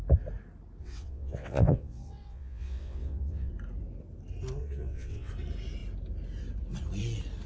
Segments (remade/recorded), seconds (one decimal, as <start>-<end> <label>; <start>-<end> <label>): 0.0-0.8 recorded; 0.8-3.5 remade; 3.5-4.6 recorded; 4.6-5.3 remade; 5.3-7.5 recorded